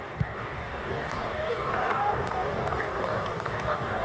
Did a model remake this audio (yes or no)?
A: yes